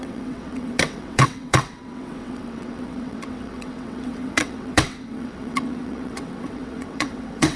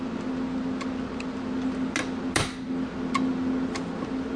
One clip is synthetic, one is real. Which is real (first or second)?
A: second